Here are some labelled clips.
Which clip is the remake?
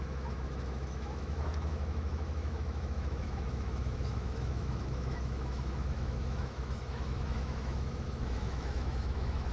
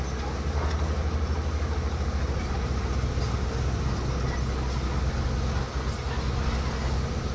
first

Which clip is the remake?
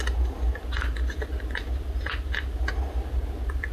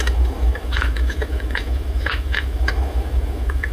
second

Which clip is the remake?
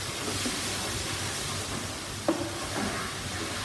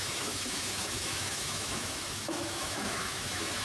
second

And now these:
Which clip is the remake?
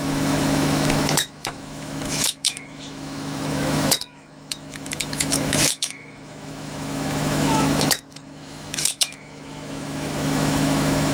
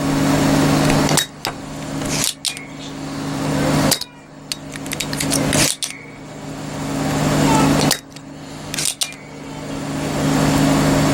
first